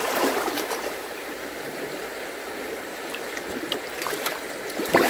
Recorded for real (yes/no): no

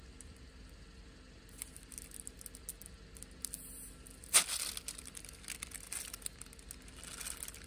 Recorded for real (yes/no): yes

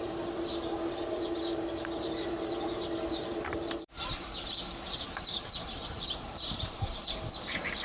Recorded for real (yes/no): no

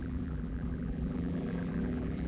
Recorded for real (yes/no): no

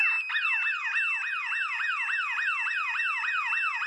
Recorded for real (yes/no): yes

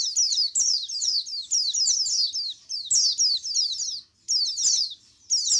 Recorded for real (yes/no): yes